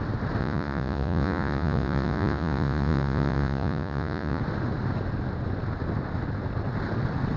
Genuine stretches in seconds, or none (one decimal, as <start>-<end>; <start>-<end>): 0.0-0.4; 4.4-7.4